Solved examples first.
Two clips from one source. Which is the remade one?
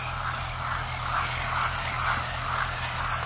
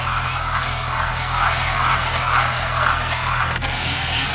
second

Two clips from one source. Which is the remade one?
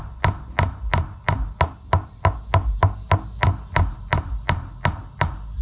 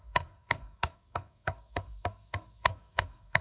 second